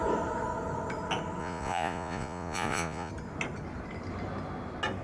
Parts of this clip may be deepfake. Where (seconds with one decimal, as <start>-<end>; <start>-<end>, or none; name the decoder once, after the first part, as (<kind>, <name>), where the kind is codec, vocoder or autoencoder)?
1.4-3.1 (vocoder, Vocos)